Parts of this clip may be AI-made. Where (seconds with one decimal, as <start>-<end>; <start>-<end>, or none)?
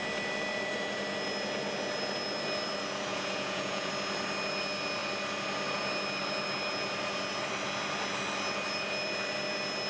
3.1-3.9